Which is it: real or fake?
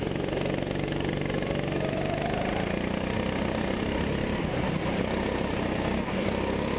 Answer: real